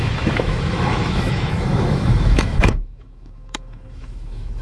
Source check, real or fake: fake